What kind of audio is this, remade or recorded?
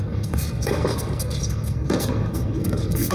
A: remade